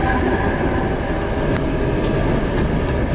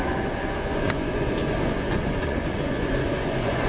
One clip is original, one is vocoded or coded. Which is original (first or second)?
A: first